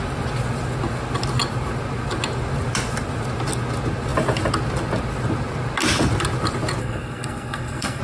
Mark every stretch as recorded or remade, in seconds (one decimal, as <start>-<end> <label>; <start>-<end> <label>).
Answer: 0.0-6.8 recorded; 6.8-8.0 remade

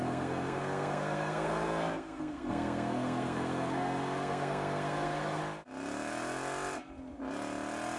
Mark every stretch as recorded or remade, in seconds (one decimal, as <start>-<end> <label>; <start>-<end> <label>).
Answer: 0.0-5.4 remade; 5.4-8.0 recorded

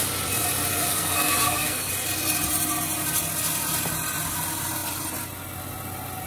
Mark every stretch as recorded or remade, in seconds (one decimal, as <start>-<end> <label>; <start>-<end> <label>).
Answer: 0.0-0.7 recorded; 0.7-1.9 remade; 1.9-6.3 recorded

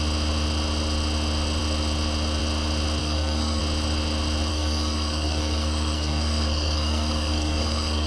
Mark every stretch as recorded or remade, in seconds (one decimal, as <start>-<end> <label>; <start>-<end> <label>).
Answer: 0.0-3.0 recorded; 3.0-3.6 remade; 3.6-4.5 recorded; 4.5-8.1 remade